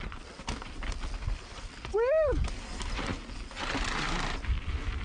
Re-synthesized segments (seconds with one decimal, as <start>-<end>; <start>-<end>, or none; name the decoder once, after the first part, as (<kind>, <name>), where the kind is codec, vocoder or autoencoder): none